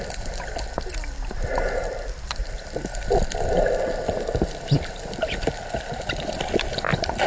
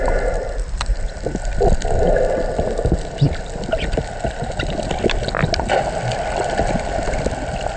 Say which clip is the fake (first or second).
first